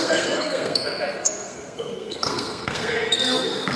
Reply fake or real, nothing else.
fake